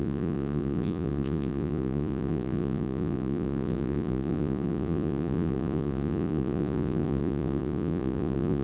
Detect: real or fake fake